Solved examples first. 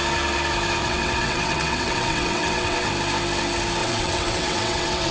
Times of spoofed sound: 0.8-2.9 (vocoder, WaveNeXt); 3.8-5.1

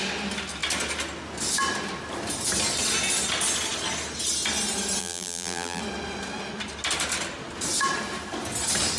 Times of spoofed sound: 5.0-5.8 (vocoder, BigVGAN v2)